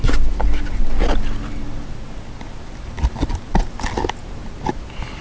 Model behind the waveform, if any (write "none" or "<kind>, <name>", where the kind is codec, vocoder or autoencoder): none